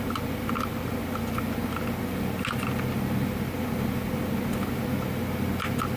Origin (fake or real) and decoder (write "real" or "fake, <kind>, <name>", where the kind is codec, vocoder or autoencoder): real